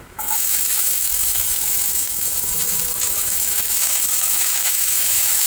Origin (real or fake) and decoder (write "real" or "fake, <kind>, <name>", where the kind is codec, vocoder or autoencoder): fake, autoencoder, DAC-VAE